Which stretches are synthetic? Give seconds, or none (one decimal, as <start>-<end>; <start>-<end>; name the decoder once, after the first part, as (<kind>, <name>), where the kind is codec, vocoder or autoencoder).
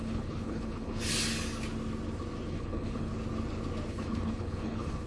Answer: 0.0-1.0 (codec, HILCodec); 2.5-3.1; 3.9-5.1